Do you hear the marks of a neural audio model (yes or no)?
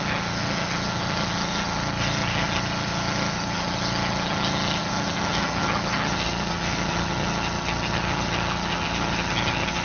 yes